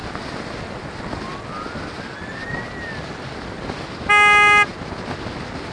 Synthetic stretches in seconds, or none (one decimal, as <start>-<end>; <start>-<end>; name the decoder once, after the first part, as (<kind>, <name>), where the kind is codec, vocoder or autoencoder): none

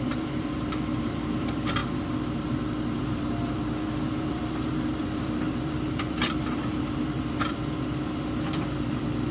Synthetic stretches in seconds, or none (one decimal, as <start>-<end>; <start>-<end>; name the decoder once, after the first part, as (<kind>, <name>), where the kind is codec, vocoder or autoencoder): 0.0-1.8 (vocoder, BigVGAN v2); 3.0-9.3

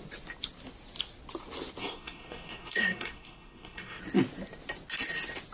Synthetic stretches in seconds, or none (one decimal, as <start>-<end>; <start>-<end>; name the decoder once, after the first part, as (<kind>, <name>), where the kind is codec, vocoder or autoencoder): 1.8-4.0 (codec, SNAC)

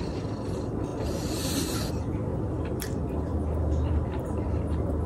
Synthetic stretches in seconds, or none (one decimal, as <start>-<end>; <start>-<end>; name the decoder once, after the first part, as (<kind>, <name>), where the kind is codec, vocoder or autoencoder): none

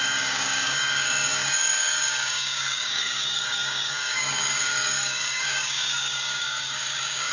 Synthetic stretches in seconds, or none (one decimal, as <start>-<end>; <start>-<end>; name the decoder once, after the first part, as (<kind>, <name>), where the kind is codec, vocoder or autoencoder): 0.0-7.3 (codec, DAC)